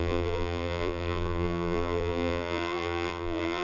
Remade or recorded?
remade